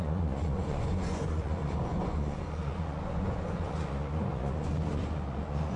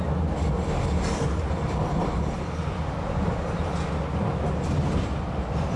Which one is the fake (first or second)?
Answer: first